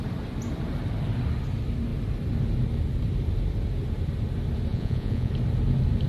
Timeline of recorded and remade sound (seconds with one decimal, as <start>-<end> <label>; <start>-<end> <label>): 0.0-4.7 recorded; 4.7-5.3 remade; 5.3-6.1 recorded